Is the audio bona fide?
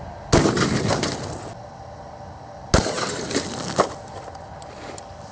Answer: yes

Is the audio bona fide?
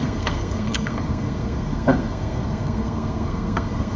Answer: no